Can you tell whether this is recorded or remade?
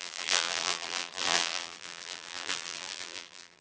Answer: remade